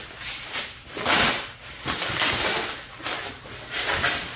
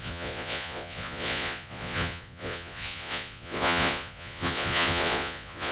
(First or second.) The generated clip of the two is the second